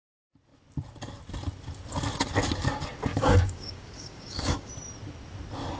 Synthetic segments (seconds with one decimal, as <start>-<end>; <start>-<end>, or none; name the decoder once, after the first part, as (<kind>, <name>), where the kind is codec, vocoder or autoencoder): 3.1-4.7 (codec, DAC)